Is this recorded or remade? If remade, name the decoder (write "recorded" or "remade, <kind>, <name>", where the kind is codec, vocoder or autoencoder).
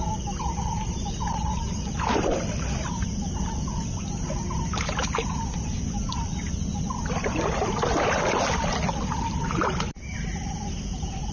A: recorded